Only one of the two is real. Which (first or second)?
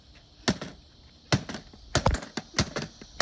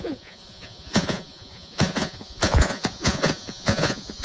first